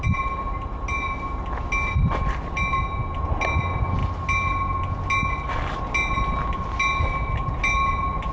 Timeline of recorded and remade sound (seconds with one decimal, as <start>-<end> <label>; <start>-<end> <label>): 0.0-8.3 recorded